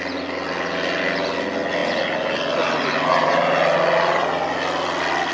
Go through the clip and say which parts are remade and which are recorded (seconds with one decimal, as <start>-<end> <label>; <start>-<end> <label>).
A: 0.0-5.3 recorded